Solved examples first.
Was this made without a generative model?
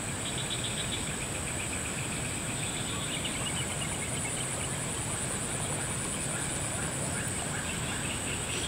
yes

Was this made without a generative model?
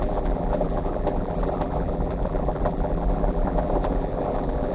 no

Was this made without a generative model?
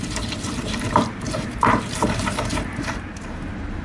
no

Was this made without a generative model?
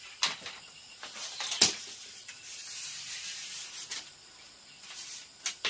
yes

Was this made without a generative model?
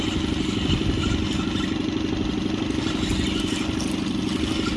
yes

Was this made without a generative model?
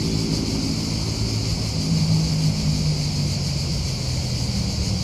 yes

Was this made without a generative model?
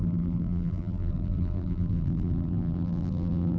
no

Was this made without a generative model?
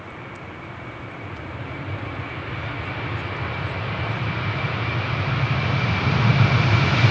no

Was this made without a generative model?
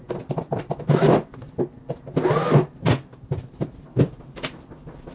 no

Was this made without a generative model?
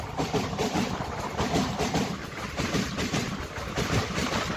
no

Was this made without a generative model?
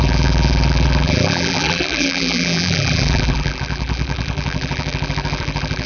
no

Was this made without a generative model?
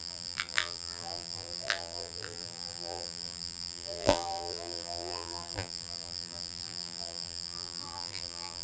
no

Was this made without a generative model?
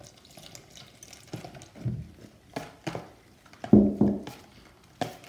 yes